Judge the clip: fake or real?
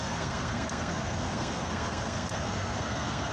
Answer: fake